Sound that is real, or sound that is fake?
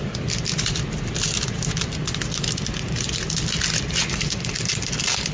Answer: fake